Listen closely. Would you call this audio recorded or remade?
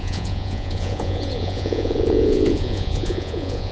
remade